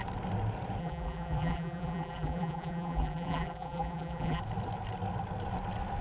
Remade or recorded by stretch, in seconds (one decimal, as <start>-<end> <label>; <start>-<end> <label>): 0.0-0.8 recorded; 0.8-4.4 remade; 4.4-6.0 recorded